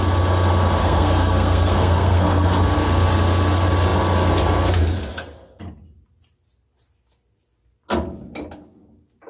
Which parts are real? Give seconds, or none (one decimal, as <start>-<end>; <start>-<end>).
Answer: 0.0-0.8; 2.6-9.3